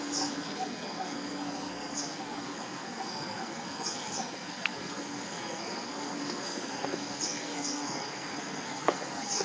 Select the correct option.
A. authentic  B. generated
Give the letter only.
B